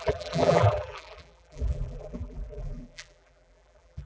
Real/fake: fake